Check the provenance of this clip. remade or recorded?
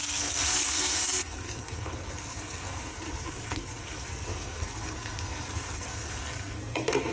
remade